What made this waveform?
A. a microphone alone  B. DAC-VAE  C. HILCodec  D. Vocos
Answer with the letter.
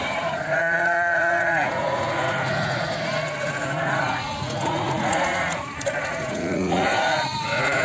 D